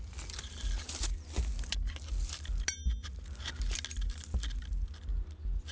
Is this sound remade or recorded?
recorded